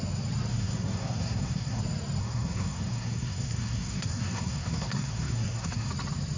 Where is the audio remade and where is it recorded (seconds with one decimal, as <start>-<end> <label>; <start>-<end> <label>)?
0.0-0.5 recorded; 0.5-1.8 remade; 1.8-2.2 recorded; 2.2-5.9 remade; 5.9-6.4 recorded